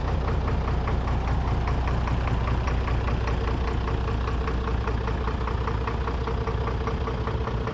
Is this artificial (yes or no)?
no